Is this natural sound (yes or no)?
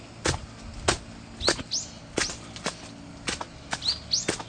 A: yes